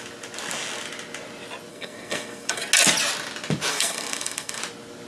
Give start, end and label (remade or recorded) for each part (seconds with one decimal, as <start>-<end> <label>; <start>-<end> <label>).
0.0-1.7 recorded; 1.7-2.6 remade; 2.6-3.7 recorded; 3.7-4.6 remade; 4.6-5.1 recorded